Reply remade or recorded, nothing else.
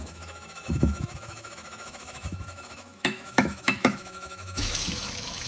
remade